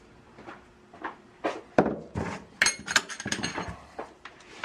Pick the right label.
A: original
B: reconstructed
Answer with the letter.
A